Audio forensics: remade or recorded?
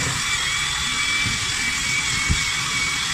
recorded